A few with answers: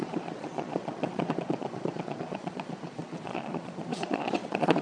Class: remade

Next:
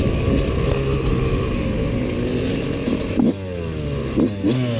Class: recorded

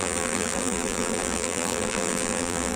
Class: remade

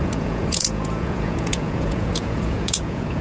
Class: remade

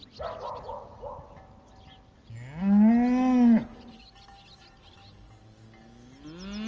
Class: recorded